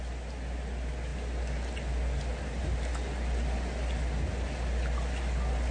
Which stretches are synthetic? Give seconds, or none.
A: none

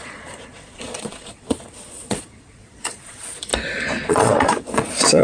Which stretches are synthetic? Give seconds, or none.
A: 0.0-3.5 (vocoder, Vocos); 4.1-5.2